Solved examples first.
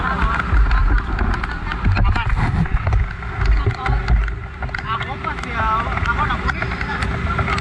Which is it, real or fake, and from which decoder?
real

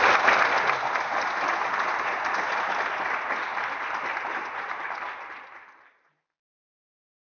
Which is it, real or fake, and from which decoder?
real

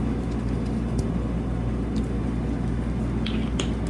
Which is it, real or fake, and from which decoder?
real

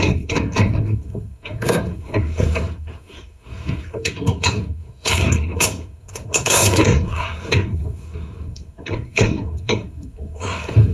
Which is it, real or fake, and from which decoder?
fake, codec, SNAC